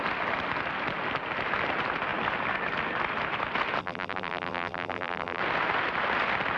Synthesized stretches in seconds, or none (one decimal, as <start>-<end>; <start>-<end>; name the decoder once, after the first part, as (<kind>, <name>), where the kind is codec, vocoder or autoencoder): 3.8-5.4 (vocoder, BigVGAN v2)